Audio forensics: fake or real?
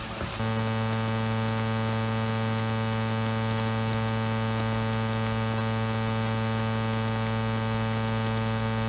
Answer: real